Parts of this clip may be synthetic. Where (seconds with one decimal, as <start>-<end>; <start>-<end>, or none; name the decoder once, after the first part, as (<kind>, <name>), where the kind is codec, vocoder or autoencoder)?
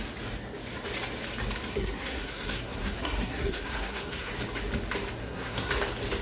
1.7-4.3 (codec, SNAC); 5.2-5.7